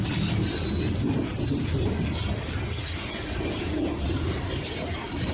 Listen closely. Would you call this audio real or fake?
real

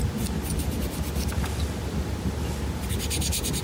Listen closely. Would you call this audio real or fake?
real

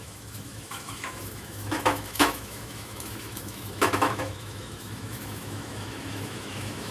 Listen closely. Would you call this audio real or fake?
fake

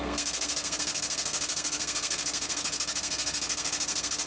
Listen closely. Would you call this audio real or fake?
fake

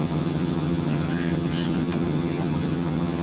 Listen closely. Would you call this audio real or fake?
fake